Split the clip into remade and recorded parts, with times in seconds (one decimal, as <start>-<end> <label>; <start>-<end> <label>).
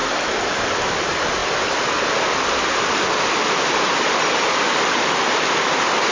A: 0.0-0.6 recorded; 0.6-6.1 remade